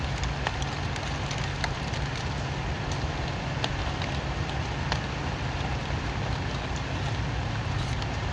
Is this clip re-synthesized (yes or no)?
no